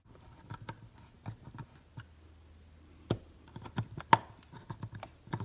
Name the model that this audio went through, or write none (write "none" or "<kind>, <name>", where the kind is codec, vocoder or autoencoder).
none